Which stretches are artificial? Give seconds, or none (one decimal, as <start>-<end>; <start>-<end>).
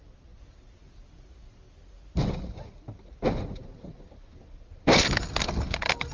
none